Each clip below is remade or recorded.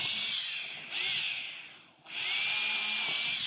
recorded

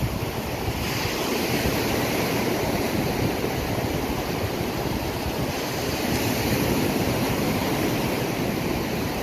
remade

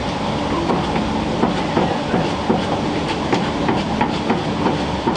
recorded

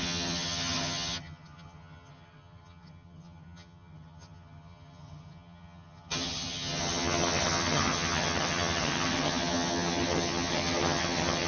remade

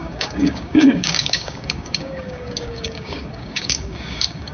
remade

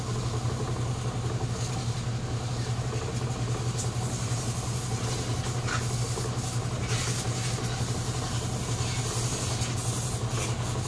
recorded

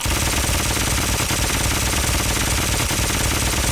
remade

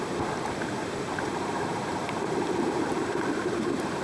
remade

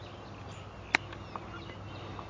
recorded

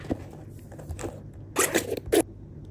recorded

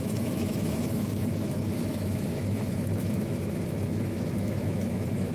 remade